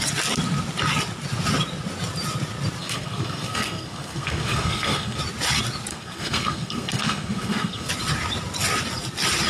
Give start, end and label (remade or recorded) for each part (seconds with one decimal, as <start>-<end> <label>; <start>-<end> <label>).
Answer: 0.0-2.8 recorded; 2.8-5.2 remade; 5.2-5.9 recorded; 5.9-7.9 remade; 7.9-9.5 recorded